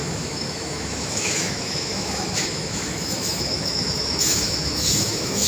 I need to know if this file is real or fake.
fake